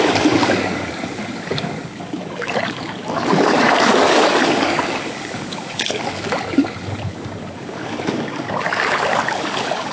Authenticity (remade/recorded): remade